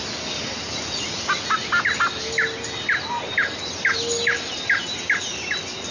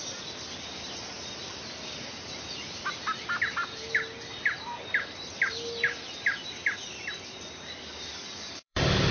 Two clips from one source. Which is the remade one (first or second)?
second